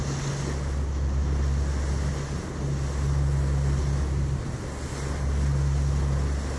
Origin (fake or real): real